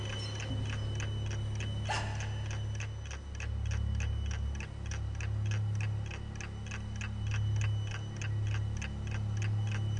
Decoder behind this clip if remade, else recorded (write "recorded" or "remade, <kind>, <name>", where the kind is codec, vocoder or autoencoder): recorded